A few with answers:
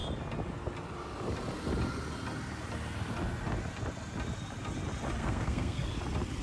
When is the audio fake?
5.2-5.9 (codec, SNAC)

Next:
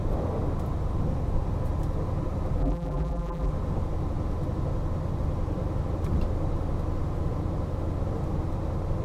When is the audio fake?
2.6-3.5 (vocoder, BigVGAN v2)

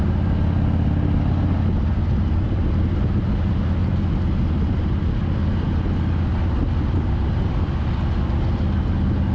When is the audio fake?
none